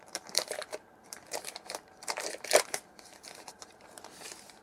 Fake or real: fake